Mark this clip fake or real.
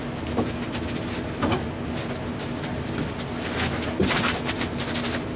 real